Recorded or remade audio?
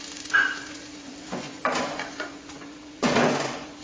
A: remade